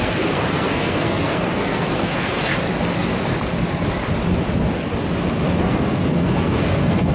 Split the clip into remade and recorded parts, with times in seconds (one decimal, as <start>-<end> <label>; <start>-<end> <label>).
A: 0.0-2.5 remade; 2.5-5.6 recorded; 5.6-7.1 remade